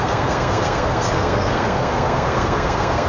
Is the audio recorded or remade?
remade